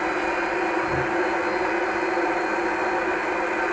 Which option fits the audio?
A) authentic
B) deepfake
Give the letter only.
A